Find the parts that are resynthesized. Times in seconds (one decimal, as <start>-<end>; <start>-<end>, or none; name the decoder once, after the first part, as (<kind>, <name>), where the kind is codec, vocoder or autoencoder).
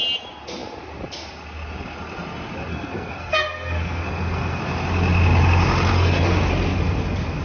2.7-4.6 (codec, SNAC); 5.9-6.5